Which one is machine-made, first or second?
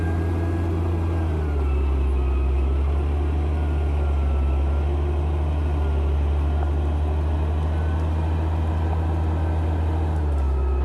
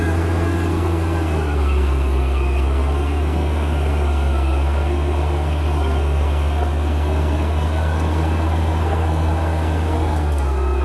second